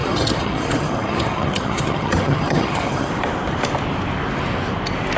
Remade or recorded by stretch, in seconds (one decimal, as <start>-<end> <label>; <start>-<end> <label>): 0.0-3.1 remade; 3.1-5.2 recorded